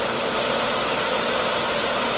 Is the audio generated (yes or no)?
yes